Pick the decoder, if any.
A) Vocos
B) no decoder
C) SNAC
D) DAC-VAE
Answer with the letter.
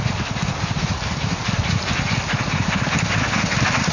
B